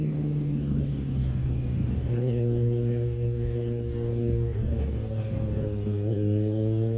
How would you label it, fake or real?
fake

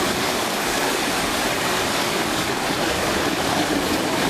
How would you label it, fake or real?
fake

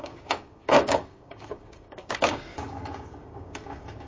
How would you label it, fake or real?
fake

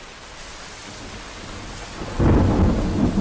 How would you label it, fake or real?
real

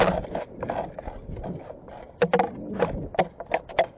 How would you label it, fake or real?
real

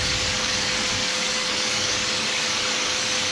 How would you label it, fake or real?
fake